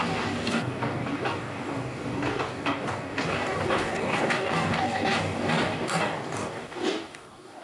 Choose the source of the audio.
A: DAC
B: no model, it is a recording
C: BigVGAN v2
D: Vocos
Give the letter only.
A